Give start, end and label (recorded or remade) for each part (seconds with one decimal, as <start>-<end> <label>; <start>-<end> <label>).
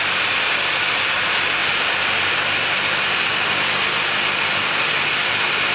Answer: 0.0-5.7 recorded